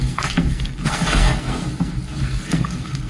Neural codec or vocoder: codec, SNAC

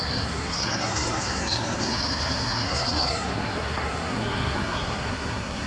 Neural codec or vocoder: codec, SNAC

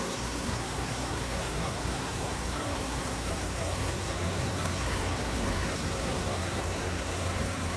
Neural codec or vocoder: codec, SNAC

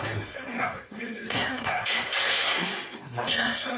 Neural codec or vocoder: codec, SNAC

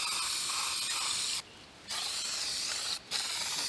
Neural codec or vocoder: none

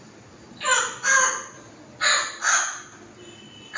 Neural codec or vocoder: none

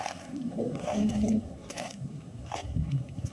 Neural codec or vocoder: codec, SNAC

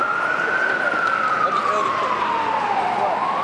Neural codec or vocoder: none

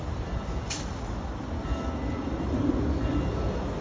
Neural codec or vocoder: none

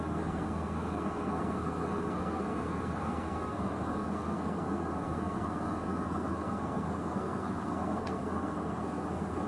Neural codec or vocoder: codec, SNAC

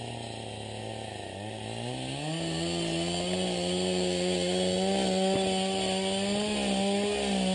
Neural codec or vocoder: none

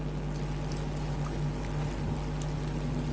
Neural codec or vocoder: none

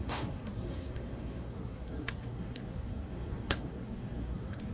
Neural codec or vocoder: codec, SNAC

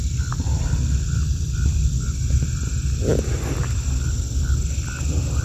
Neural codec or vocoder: none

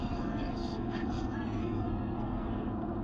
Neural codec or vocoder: codec, SNAC